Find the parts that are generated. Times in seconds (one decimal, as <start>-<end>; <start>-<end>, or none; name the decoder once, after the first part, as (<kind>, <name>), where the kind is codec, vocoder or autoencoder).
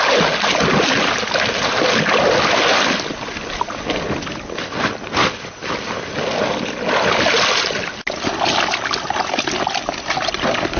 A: none